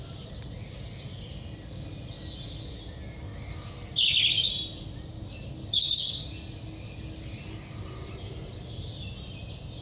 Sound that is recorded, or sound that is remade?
recorded